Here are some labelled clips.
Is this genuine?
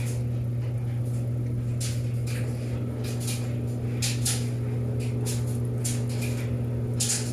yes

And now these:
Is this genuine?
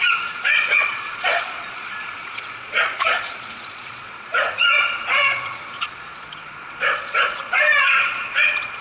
no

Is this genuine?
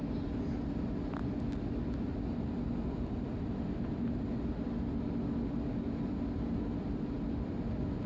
yes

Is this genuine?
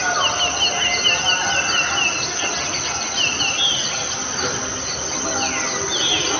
yes